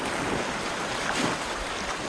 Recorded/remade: recorded